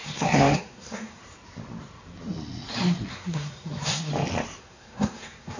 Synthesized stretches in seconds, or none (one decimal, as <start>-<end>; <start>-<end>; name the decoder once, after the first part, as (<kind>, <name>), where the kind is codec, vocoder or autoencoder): 0.0-1.2 (codec, SNAC); 3.1-4.1; 4.6-5.6